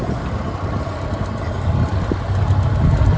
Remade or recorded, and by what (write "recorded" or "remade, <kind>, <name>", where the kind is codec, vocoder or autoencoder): recorded